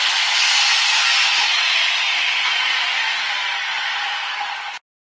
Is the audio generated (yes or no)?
no